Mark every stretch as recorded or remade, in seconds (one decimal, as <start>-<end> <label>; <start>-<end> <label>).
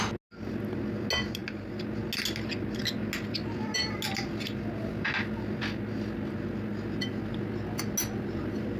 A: 0.0-8.8 recorded